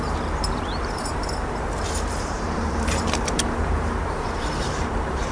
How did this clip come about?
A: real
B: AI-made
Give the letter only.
B